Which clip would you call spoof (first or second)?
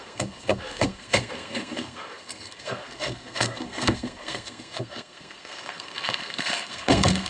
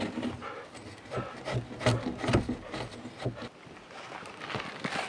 first